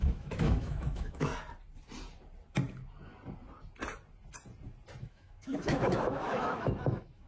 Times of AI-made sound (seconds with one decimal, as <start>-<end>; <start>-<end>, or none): 0.0-1.3; 5.0-7.3